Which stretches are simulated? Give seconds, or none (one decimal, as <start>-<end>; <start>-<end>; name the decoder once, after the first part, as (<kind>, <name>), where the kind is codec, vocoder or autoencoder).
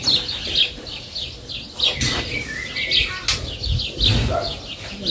none